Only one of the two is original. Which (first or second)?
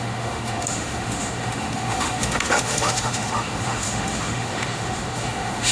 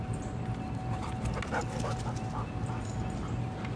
second